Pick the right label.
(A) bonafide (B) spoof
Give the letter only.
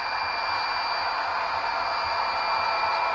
A